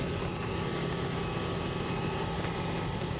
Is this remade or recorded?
recorded